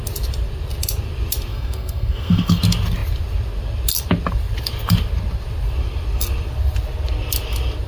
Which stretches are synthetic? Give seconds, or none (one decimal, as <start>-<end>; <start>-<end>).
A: 1.5-2.6